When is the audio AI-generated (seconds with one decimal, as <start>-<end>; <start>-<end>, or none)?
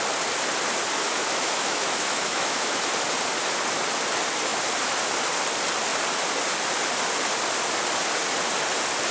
1.0-2.8